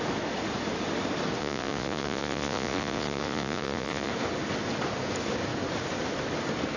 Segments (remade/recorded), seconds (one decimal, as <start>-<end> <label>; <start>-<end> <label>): 0.0-1.4 recorded; 1.4-4.1 remade; 4.1-6.8 recorded